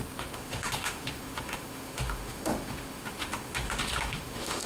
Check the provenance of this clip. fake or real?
fake